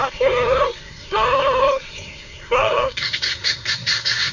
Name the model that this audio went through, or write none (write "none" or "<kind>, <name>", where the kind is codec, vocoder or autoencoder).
codec, SNAC